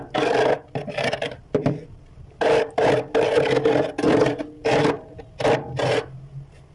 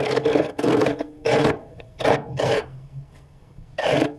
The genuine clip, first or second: first